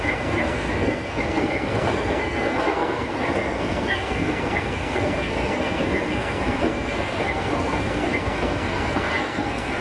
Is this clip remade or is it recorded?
remade